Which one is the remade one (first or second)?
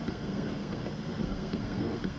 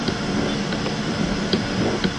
first